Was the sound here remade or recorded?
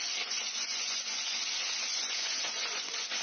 remade